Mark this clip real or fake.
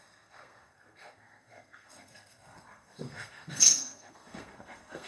fake